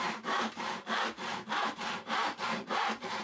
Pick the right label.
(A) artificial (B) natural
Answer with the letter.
A